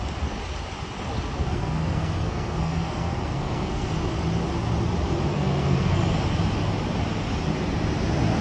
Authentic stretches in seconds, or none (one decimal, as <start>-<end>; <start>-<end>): 0.0-1.4; 3.9-5.3; 6.0-8.4